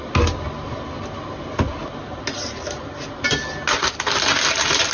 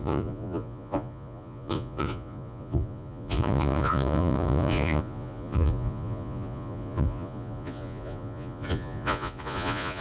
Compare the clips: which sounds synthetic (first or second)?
second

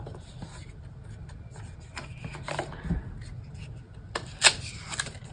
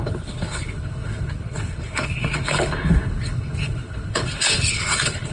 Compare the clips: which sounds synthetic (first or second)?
second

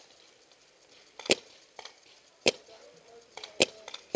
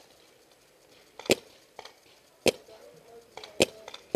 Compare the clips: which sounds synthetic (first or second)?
first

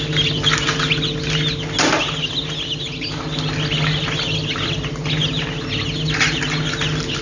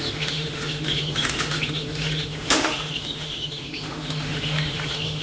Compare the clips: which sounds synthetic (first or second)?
second